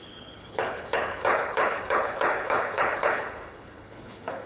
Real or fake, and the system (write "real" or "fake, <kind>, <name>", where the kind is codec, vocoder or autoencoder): fake, codec, HILCodec